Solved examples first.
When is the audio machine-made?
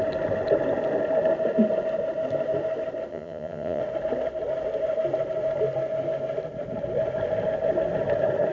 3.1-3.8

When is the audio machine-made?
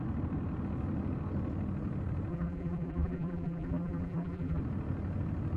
2.3-4.6